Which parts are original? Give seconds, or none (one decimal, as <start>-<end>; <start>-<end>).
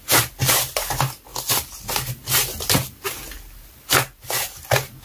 0.0-1.3; 3.8-5.0